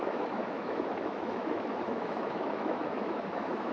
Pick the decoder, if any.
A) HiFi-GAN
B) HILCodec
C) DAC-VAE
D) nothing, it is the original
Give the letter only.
C